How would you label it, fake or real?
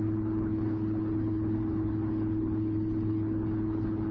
fake